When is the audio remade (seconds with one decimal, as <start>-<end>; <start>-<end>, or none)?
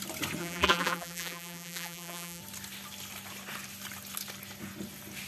0.4-2.4